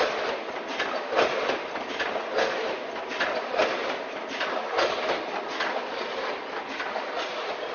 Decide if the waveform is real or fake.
real